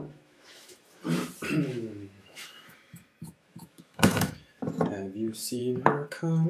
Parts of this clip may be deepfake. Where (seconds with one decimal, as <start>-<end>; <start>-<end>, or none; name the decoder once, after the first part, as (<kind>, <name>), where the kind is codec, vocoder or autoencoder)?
0.0-1.0 (autoencoder, DAC-VAE); 1.6-6.5